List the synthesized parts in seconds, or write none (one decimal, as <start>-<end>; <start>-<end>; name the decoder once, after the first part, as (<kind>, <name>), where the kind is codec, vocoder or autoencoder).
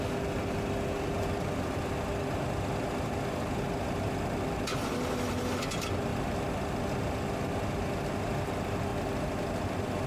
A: none